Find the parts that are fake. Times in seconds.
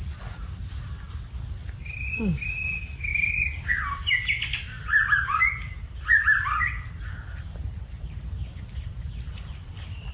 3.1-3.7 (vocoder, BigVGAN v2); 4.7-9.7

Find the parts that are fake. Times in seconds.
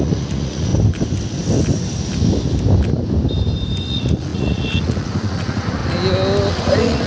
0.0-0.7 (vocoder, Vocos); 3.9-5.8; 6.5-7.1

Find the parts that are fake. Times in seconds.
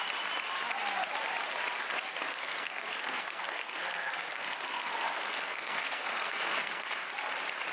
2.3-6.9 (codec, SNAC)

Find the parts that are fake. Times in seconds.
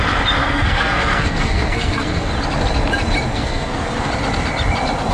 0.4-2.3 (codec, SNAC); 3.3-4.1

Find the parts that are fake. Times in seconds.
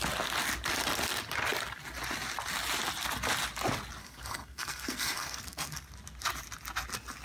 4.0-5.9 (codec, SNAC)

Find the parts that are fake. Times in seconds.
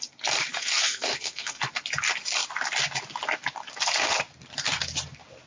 0.5-1.6 (codec, SNAC)